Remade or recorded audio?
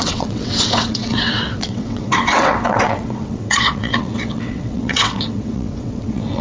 remade